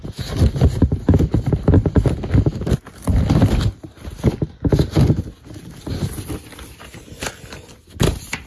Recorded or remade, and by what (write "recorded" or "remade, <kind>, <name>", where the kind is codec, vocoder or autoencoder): recorded